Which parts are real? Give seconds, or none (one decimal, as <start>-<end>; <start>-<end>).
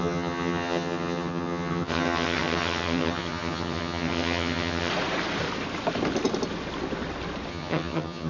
4.9-7.5